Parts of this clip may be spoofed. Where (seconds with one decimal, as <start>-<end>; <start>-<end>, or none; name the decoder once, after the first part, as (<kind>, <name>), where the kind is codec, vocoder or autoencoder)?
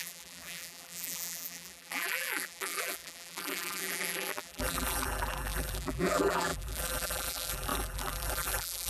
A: 0.0-8.9 (vocoder, BigVGAN v2)